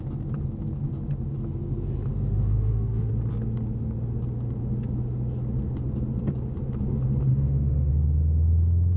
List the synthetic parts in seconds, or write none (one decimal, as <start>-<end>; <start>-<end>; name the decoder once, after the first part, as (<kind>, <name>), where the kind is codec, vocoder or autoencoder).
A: 2.1-3.1 (autoencoder, DAC-VAE); 7.3-7.9